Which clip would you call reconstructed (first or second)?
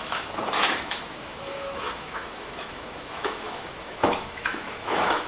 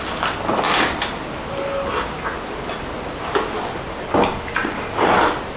first